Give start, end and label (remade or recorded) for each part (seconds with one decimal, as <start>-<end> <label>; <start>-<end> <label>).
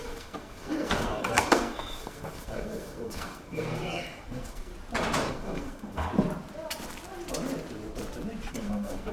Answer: 0.0-4.7 remade; 4.7-5.3 recorded; 5.3-6.1 remade; 6.1-8.5 recorded; 8.5-9.1 remade